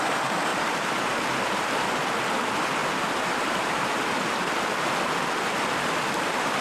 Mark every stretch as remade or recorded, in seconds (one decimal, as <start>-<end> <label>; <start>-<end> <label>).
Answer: 0.0-0.5 recorded; 0.5-1.1 remade; 1.1-2.8 recorded; 2.8-4.5 remade; 4.5-6.6 recorded